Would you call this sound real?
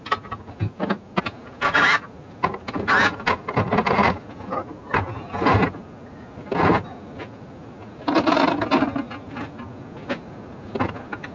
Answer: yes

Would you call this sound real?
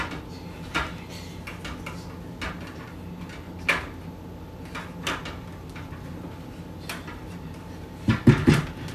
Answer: yes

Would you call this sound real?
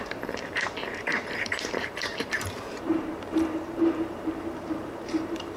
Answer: no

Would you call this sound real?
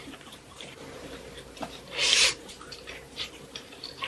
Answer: no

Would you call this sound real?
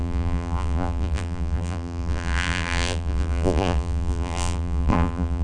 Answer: no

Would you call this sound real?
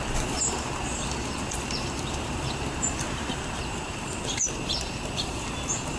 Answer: no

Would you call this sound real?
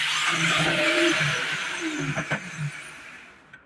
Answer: no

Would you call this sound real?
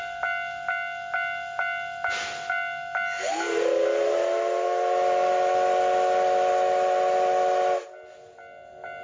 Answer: yes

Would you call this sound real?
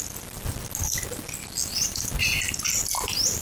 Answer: yes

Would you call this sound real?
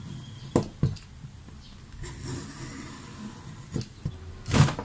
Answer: yes